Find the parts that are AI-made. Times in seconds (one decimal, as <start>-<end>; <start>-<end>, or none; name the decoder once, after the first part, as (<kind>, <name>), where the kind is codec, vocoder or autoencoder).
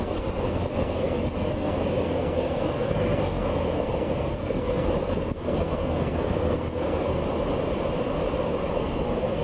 0.0-7.2 (codec, SNAC); 8.6-9.4